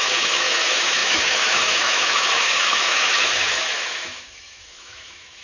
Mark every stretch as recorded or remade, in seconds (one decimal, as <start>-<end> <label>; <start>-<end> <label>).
0.0-5.4 remade